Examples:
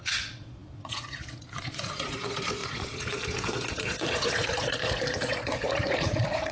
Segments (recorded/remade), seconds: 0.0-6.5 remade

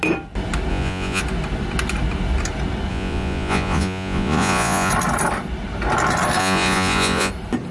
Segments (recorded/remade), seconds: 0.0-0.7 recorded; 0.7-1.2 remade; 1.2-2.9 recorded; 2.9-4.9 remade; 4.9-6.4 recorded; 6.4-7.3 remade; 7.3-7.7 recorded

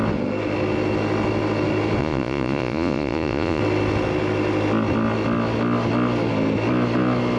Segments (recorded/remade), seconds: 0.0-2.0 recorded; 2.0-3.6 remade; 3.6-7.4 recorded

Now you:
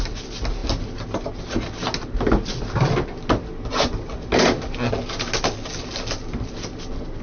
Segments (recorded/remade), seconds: 0.0-7.2 recorded

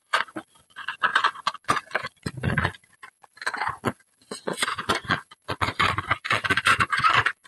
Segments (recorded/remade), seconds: 0.0-7.5 remade

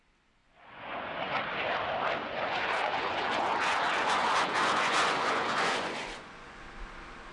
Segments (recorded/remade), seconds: 0.0-0.4 recorded; 0.4-1.4 remade; 1.4-2.2 recorded; 2.2-6.6 remade; 6.6-7.3 recorded